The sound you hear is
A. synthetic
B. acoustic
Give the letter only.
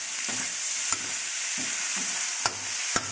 B